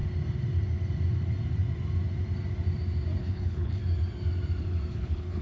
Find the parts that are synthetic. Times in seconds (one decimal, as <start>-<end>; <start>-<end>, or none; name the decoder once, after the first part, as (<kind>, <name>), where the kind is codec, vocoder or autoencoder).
3.2-3.8 (codec, HILCodec); 4.9-5.4